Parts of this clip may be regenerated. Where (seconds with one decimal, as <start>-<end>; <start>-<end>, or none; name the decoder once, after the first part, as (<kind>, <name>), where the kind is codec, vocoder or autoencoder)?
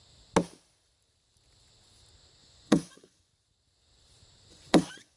2.4-3.3 (vocoder, Vocos); 4.5-5.2